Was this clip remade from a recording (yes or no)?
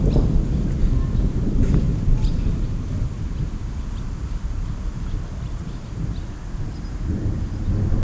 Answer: no